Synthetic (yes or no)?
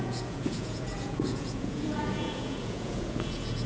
yes